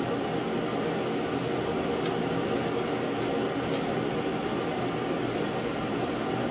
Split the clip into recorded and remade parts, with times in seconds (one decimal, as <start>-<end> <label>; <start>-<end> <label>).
0.0-6.5 recorded